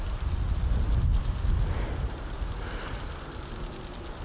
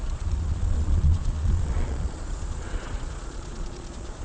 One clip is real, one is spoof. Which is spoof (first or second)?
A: second